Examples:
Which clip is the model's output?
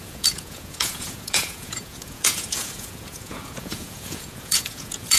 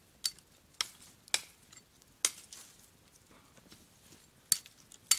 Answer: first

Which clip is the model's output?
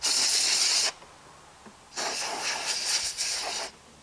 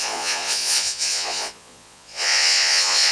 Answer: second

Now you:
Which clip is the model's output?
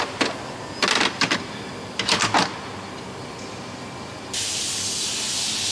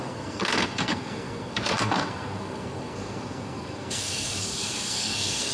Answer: second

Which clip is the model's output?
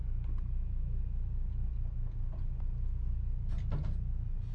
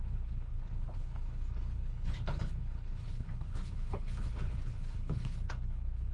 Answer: second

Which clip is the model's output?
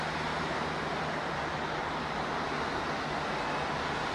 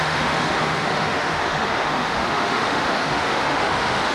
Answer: second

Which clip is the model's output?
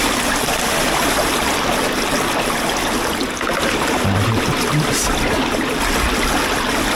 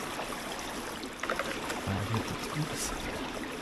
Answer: second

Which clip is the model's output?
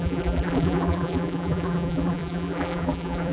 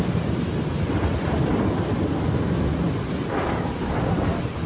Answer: first